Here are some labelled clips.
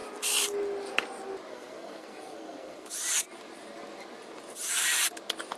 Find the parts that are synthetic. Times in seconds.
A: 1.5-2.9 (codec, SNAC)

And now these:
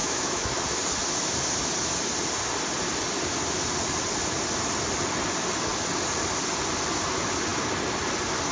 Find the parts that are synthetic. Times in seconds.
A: 0.0-0.6 (autoencoder, DAC-VAE)

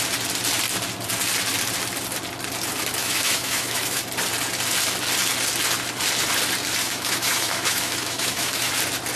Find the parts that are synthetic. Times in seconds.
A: 3.0-4.0 (autoencoder, DAC-VAE); 6.8-8.7

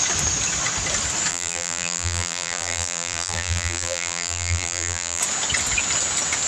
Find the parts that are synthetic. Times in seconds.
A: 1.3-5.2 (vocoder, BigVGAN v2)

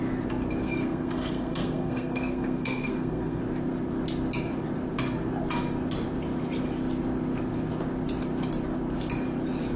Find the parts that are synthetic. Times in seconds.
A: 0.6-3.4 (codec, SNAC)